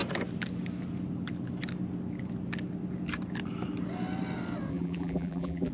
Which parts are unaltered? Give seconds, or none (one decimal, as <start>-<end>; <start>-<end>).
0.0-4.7